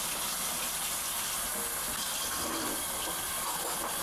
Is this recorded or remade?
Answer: recorded